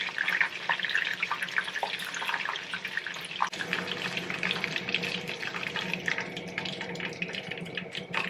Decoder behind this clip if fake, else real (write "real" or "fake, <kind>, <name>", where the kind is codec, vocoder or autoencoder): real